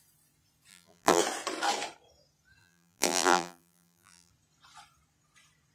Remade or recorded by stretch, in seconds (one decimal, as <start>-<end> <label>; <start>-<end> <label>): 0.0-0.7 recorded; 0.7-1.2 remade; 1.2-2.6 recorded; 2.6-4.3 remade; 4.3-5.7 recorded